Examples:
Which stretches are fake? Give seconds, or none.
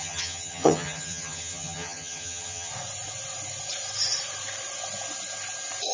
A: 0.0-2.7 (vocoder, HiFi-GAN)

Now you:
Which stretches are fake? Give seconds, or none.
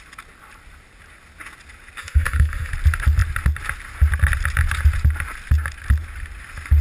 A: 2.0-2.7 (autoencoder, DAC-VAE)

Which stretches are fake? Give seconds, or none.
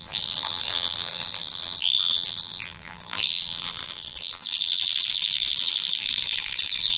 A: 0.0-7.0 (vocoder, BigVGAN v2)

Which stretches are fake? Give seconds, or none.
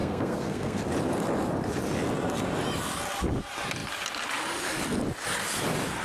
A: 0.0-0.8 (codec, SNAC)